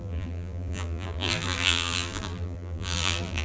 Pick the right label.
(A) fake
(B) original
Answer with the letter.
A